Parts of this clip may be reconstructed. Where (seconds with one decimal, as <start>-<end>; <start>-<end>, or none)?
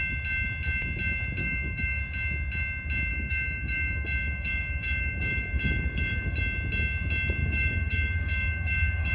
1.4-2.0; 3.1-6.4; 7.4-9.1